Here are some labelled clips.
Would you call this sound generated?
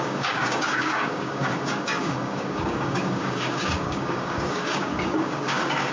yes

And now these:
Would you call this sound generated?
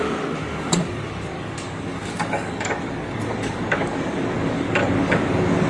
yes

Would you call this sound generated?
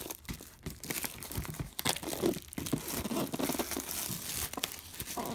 no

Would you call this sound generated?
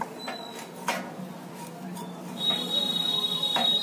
no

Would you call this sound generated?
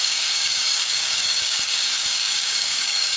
yes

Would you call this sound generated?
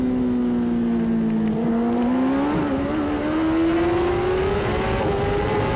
no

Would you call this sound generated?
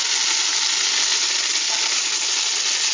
no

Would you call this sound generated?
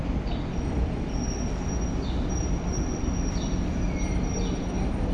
no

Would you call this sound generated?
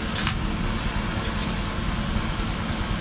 no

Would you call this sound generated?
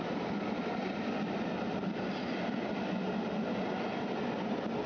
no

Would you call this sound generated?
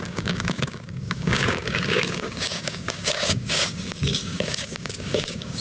yes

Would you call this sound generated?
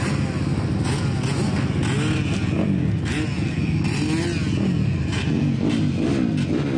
no